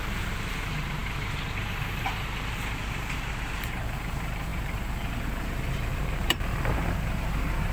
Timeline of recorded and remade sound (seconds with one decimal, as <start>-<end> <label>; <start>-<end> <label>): 0.0-7.7 remade